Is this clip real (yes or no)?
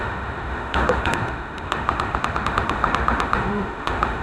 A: no